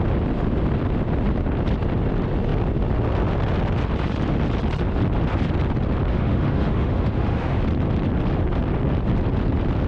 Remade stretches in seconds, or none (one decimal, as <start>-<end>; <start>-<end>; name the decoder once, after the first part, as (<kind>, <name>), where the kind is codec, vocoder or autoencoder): 6.1-7.6 (autoencoder, DAC-VAE)